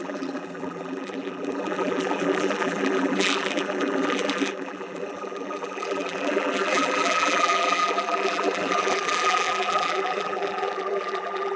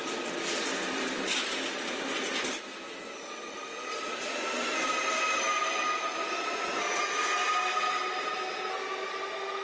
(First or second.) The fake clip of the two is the first